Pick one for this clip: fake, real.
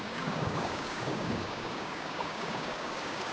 fake